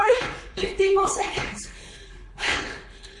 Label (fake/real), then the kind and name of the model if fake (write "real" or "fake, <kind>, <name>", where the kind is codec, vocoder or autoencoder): fake, codec, HILCodec